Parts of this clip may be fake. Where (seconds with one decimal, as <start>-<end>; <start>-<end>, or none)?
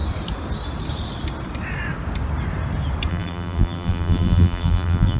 3.1-5.2